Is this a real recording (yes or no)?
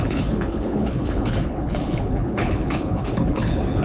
no